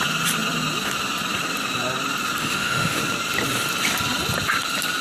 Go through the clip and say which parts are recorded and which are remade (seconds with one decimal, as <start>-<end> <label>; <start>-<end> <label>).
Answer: 0.0-2.4 recorded; 2.4-3.0 remade; 3.0-5.0 recorded